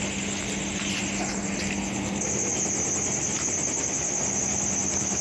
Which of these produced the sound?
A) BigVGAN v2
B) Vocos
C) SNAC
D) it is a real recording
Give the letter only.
D